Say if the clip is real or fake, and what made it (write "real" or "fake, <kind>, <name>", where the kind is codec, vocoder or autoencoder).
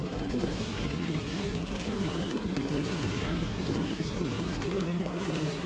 fake, codec, SNAC